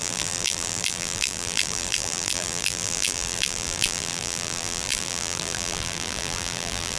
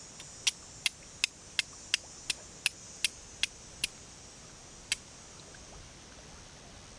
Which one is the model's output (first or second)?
first